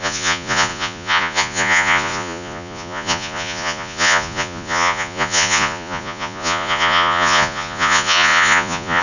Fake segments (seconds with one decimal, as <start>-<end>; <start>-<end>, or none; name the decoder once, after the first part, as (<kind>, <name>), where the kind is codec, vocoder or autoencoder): 0.0-9.0 (vocoder, Vocos)